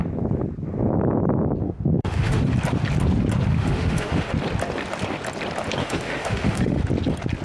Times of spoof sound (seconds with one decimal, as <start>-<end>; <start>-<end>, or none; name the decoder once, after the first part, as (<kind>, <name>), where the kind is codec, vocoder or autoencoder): 1.6-2.4 (autoencoder, DAC-VAE); 3.5-4.3; 5.8-6.8